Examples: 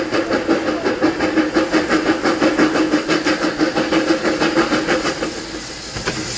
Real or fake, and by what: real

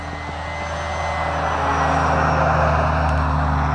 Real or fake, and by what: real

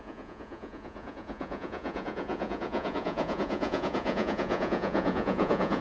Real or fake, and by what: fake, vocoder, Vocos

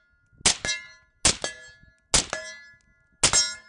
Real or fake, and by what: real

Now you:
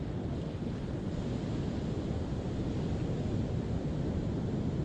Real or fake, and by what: real